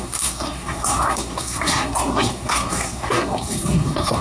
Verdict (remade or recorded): remade